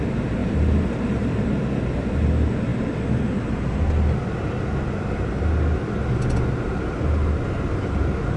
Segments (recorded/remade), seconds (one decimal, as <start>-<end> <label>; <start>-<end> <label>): 0.0-0.4 recorded; 0.4-1.5 remade; 1.5-8.4 recorded